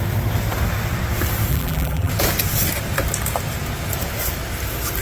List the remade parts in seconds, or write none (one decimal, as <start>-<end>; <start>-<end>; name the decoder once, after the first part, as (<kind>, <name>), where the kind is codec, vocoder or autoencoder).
1.5-2.1 (vocoder, BigVGAN v2)